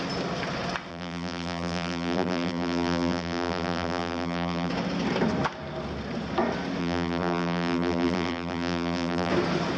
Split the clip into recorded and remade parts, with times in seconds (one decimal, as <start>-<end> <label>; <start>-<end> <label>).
0.0-0.9 recorded; 0.9-4.7 remade; 4.7-6.8 recorded; 6.8-9.3 remade; 9.3-9.8 recorded